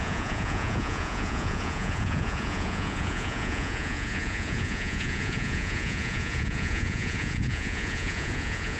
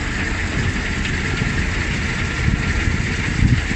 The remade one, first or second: first